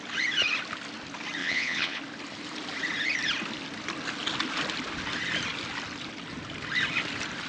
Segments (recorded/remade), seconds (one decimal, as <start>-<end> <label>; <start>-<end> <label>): 0.0-1.4 recorded; 1.4-2.0 remade; 2.0-7.5 recorded

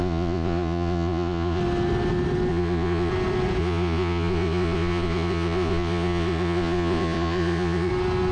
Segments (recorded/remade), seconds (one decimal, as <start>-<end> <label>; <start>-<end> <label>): 0.0-1.6 remade; 1.6-2.5 recorded; 2.5-3.1 remade; 3.1-3.6 recorded; 3.6-7.9 remade; 7.9-8.3 recorded

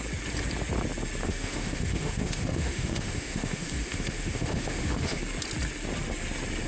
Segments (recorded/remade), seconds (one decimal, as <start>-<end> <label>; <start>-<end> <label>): 0.0-1.2 recorded; 1.2-5.2 remade; 5.2-6.7 recorded